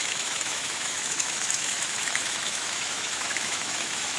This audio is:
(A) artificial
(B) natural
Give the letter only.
A